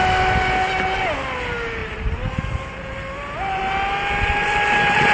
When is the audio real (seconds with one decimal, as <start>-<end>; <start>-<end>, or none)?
0.0-1.8; 3.6-5.1